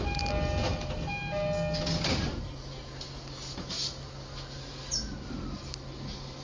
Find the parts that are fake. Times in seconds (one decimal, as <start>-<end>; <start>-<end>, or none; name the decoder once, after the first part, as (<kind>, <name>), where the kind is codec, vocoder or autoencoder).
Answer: none

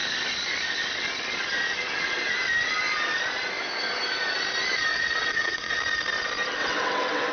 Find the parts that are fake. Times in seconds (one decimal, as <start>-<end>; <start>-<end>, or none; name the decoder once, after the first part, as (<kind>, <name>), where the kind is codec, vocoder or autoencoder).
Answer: 4.9-5.8 (vocoder, WaveNeXt); 6.6-7.3

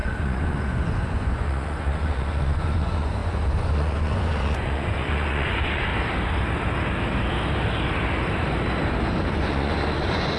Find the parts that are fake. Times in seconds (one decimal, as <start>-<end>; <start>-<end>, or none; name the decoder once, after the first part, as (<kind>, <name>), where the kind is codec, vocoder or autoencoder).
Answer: 0.0-5.9 (vocoder, Vocos); 9.3-10.4

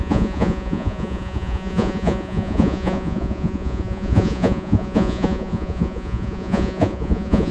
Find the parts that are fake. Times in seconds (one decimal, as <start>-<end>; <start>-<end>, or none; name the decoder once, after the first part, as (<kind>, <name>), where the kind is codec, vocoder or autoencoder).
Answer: 0.0-7.5 (vocoder, Vocos)

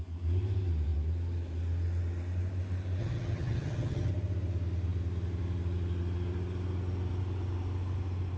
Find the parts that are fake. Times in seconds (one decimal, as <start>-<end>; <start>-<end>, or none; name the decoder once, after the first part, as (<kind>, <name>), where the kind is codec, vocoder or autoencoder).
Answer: 3.0-4.1 (vocoder, HiFi-GAN)

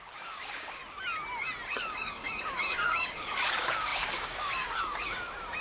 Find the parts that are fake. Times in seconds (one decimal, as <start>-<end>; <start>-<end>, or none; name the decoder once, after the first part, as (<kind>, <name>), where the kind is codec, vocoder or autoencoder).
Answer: 0.0-0.8 (codec, DAC); 1.7-5.6

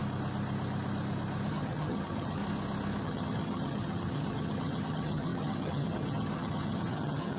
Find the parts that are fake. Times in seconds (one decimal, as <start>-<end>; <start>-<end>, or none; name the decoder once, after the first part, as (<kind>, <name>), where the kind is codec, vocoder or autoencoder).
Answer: 1.5-2.4 (vocoder, HiFi-GAN); 3.0-7.4

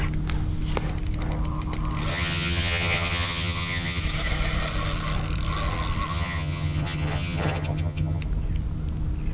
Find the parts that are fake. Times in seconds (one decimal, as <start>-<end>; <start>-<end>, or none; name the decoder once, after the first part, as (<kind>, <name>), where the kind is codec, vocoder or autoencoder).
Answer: 2.1-4.0 (vocoder, HiFi-GAN); 6.1-8.2